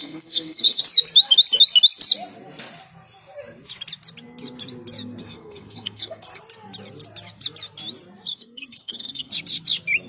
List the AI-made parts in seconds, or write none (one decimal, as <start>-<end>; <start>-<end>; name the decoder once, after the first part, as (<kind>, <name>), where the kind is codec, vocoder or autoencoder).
0.0-0.8 (codec, SNAC); 5.2-6.4; 8.3-9.3